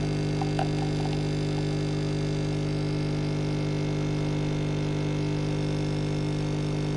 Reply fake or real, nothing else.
real